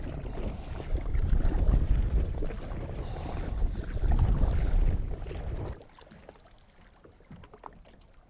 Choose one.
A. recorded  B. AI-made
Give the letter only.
A